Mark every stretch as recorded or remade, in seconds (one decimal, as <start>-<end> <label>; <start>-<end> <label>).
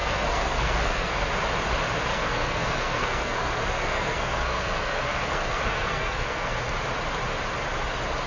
0.0-1.3 remade; 1.3-2.1 recorded; 2.1-6.6 remade; 6.6-8.3 recorded